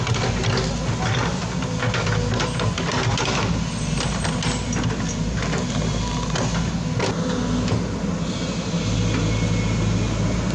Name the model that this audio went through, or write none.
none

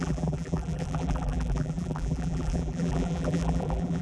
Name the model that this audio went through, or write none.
vocoder, BigVGAN v2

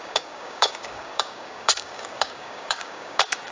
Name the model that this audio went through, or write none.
codec, DAC